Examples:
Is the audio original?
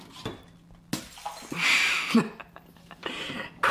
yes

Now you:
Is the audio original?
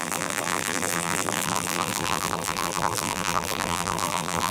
no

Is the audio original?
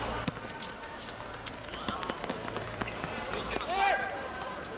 no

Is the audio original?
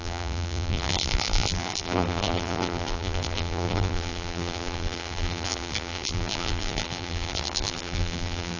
no